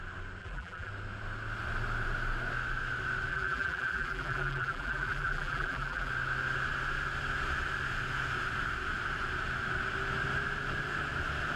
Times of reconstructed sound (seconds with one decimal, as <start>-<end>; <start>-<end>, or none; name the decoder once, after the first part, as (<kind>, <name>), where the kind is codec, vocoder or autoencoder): 0.4-0.9 (vocoder, BigVGAN v2); 3.3-6.1